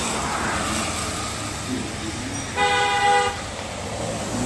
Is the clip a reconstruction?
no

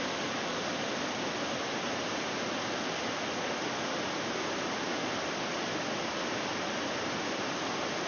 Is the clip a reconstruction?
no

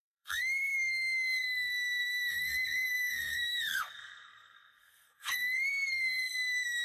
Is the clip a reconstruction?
yes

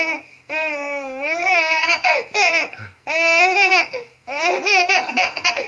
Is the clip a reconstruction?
yes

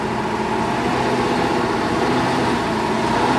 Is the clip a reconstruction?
no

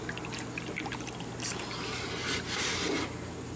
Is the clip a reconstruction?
no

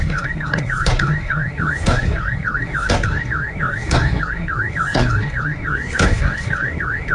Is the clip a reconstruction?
yes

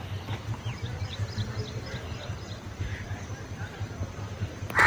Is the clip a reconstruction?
no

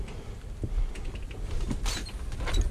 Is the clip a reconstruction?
no